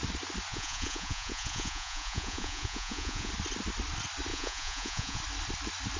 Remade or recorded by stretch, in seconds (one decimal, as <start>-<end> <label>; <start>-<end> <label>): 0.0-0.5 recorded; 0.5-3.3 remade; 3.3-4.3 recorded; 4.3-5.2 remade; 5.2-6.0 recorded